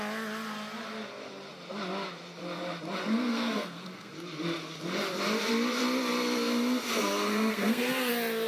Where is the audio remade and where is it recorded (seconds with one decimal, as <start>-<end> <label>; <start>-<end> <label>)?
0.0-3.0 recorded; 3.0-4.1 remade; 4.1-7.0 recorded; 7.0-8.1 remade; 8.1-8.5 recorded